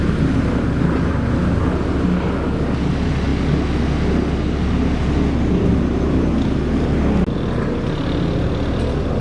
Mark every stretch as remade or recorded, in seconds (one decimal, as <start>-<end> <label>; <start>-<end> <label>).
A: 0.0-9.2 recorded